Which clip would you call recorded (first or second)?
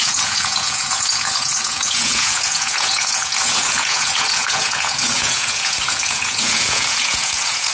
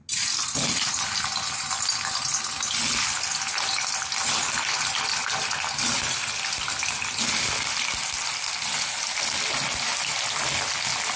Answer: second